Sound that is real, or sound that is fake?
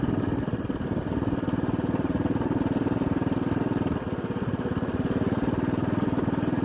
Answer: real